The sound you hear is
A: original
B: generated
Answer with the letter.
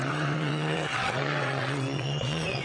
B